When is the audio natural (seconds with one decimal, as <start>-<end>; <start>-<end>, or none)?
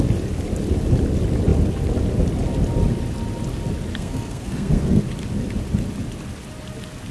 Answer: 0.0-3.9; 5.0-7.1